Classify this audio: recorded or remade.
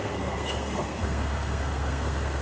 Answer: remade